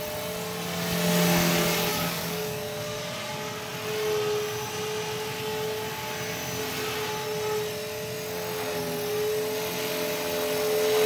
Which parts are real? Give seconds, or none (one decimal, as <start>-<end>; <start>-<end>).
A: 0.0-1.9; 3.0-11.1